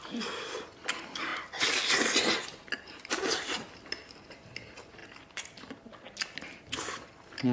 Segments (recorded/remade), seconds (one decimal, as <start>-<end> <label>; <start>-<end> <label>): 0.0-7.5 recorded